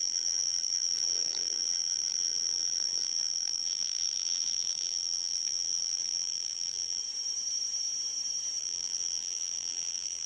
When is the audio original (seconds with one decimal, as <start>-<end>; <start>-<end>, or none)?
7.0-8.6